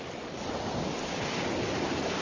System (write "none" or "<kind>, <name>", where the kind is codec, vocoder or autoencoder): none